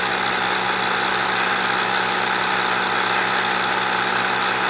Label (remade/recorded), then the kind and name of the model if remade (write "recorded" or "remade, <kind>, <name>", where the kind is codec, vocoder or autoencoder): recorded